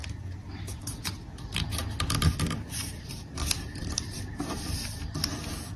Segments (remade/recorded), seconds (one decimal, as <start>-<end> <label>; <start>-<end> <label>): 0.0-1.8 recorded; 1.8-5.3 remade; 5.3-5.8 recorded